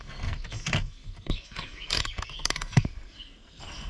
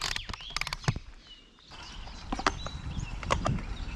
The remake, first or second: first